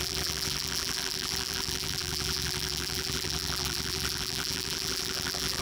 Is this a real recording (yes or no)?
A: no